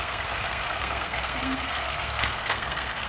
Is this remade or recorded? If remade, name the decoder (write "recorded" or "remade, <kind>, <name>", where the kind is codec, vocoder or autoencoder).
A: remade, codec, SNAC